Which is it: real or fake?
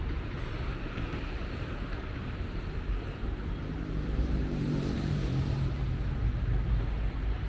fake